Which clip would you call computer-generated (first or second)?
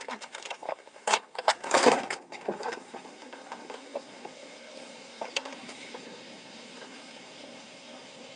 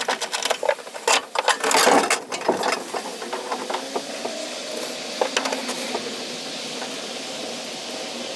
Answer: first